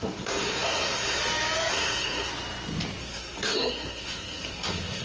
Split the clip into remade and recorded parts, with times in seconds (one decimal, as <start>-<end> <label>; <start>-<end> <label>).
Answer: 0.0-1.2 remade; 1.2-1.7 recorded; 1.7-2.3 remade; 2.3-3.0 recorded; 3.0-5.0 remade